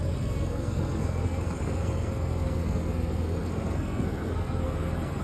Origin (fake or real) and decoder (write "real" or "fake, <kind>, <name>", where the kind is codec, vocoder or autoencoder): fake, codec, SNAC